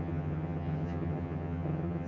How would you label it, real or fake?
fake